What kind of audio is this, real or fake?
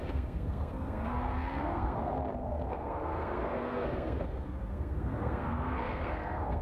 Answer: fake